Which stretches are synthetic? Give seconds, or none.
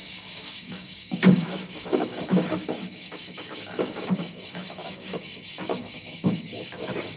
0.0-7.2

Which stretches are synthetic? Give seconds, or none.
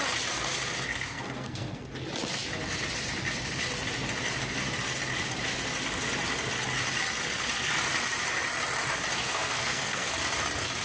0.9-1.9; 9.2-10.1